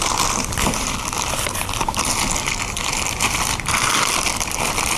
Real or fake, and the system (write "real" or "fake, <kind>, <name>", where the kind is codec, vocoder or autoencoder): fake, vocoder, BigVGAN v2